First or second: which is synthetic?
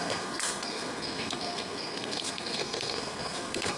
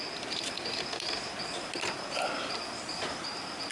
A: first